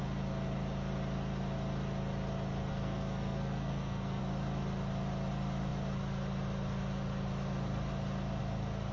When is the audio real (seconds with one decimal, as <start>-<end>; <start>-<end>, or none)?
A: 0.0-2.7; 4.2-8.9